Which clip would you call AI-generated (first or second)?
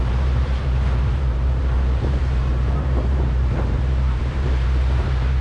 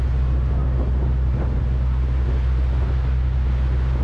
first